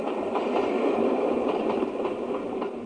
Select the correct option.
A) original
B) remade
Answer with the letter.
B